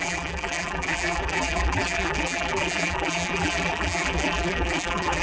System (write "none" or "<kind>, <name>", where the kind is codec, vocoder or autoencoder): vocoder, BigVGAN v2